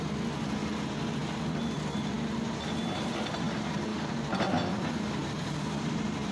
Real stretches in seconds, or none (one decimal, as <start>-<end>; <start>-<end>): 0.0-6.3